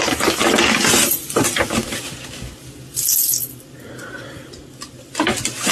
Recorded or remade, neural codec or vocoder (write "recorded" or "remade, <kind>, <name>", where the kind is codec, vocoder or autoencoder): recorded